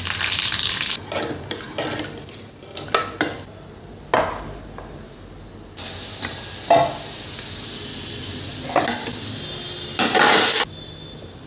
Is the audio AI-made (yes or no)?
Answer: no